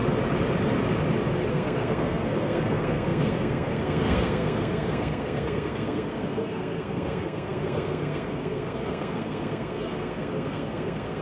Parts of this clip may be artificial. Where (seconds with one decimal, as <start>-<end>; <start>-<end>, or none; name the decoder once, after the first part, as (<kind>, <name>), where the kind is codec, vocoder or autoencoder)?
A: 1.5-11.2 (codec, SNAC)